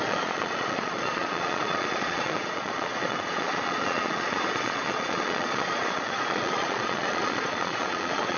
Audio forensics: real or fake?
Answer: fake